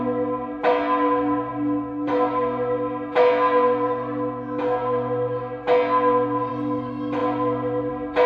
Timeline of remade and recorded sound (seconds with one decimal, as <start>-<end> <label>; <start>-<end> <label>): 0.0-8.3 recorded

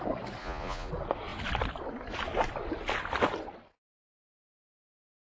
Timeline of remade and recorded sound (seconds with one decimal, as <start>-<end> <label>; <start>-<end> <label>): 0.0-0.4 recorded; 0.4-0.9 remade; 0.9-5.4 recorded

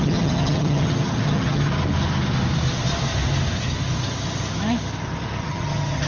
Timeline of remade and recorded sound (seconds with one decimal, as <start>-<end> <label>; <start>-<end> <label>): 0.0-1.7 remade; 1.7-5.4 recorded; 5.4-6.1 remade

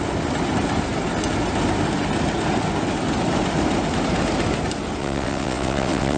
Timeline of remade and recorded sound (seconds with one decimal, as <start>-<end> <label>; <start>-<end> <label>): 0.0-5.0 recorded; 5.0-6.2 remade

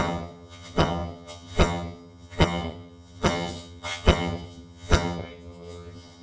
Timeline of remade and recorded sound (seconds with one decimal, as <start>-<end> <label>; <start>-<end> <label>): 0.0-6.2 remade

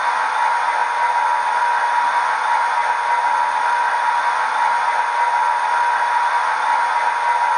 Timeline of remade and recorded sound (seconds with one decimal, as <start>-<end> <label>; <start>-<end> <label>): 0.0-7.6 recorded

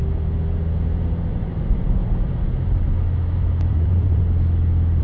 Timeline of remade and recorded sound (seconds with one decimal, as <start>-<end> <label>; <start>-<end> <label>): 0.0-1.3 recorded; 1.3-2.0 remade; 2.0-3.7 recorded; 3.7-4.2 remade; 4.2-5.0 recorded

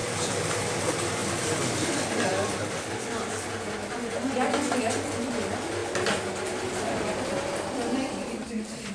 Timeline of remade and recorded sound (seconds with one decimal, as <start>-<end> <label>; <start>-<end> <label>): 0.0-1.2 recorded; 1.2-1.9 remade; 1.9-2.3 recorded; 2.3-3.2 remade; 3.2-8.9 recorded